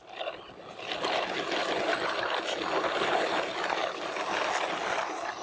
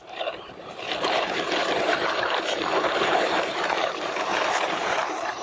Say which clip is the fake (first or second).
second